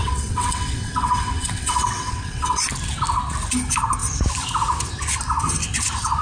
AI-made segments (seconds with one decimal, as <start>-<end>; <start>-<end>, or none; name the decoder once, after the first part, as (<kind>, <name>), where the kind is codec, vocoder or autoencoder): 0.0-2.6 (vocoder, WaveNeXt)